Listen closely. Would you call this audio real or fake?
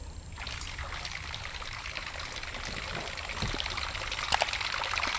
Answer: real